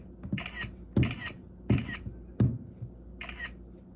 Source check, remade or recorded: recorded